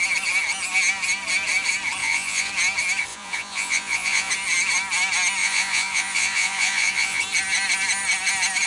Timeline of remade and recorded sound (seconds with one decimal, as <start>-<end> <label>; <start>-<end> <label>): 0.0-2.0 recorded; 2.0-2.5 remade; 2.5-3.1 recorded; 3.1-4.3 remade; 4.3-5.4 recorded; 5.4-7.2 remade; 7.2-8.7 recorded

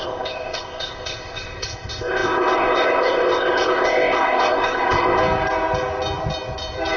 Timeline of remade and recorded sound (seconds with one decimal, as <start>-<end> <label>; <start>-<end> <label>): 0.0-5.2 remade; 5.2-7.0 recorded

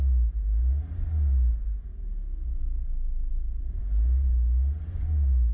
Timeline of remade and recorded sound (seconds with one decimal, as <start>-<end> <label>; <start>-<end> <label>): 0.0-3.3 recorded; 3.3-3.8 remade; 3.8-5.5 recorded

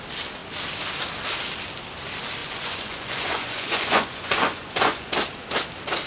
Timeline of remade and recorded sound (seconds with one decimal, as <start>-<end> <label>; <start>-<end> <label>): 0.0-2.4 recorded; 2.4-5.1 remade; 5.1-6.1 recorded

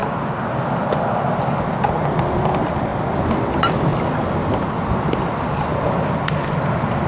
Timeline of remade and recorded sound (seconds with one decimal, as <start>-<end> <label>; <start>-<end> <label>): 0.0-2.1 recorded; 2.1-2.9 remade; 2.9-3.5 recorded; 3.5-3.9 remade; 3.9-7.1 recorded